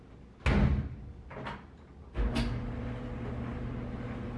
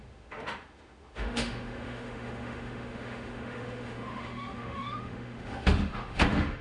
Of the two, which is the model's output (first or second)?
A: second